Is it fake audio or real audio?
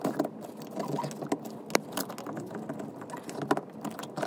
real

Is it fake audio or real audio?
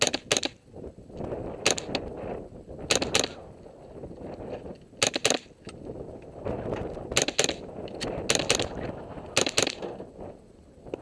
real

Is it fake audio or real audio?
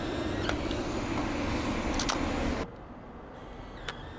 real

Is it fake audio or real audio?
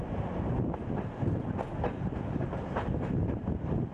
real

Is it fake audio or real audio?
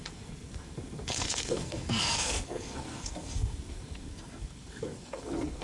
fake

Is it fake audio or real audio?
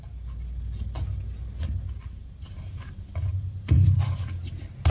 real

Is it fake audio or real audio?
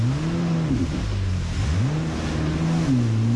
real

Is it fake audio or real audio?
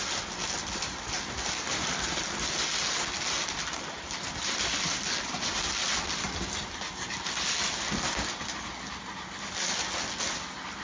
real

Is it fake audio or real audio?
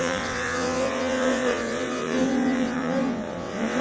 fake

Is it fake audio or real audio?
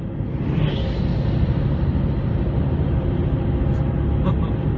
real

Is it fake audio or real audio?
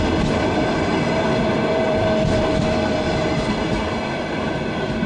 fake